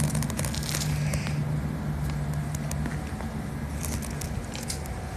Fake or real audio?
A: real